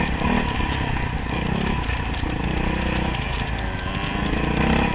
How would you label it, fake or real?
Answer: real